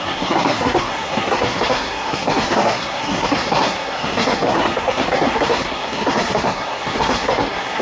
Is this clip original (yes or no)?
no